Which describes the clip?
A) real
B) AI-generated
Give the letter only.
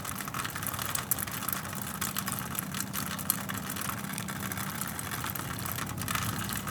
A